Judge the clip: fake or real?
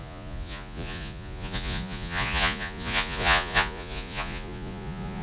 fake